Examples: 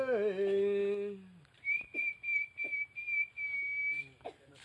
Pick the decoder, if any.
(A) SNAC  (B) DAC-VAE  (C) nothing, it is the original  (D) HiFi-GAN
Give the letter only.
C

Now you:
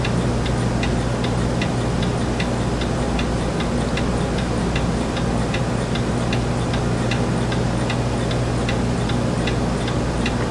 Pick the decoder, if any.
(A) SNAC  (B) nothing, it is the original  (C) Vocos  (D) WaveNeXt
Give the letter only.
B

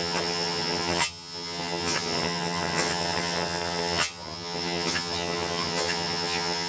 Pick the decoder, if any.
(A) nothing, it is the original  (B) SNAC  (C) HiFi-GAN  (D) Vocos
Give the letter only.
C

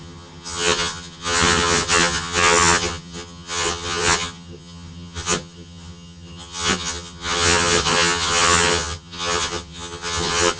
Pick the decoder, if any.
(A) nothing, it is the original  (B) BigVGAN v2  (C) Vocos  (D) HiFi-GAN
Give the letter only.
D